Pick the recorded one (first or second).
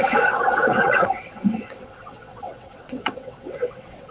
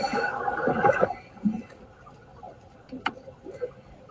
second